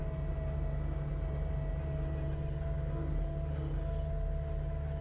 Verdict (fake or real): real